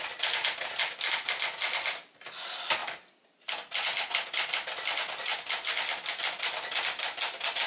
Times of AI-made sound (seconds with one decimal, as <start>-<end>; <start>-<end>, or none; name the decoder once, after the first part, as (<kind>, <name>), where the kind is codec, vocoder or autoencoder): none